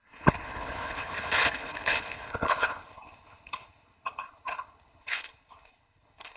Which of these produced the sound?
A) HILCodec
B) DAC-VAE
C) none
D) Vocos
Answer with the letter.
A